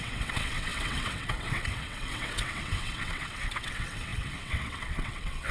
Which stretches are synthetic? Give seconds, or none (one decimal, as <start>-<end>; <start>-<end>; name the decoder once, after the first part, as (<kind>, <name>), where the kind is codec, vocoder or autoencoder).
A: 0.0-5.5 (vocoder, WaveNeXt)

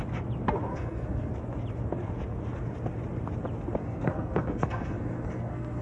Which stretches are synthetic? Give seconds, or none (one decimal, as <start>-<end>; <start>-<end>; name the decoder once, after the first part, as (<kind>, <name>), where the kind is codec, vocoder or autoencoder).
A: 0.7-1.3 (codec, SNAC); 3.8-5.8